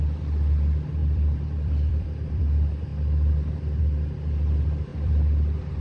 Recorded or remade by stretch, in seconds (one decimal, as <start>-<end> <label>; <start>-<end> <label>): 0.0-1.0 recorded; 1.0-2.4 remade; 2.4-4.9 recorded; 4.9-5.8 remade